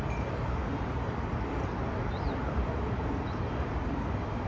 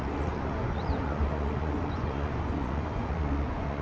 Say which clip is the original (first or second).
first